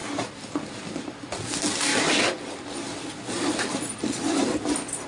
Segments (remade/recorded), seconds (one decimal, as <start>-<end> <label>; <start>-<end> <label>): 0.0-5.1 recorded